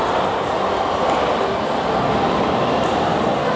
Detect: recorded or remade recorded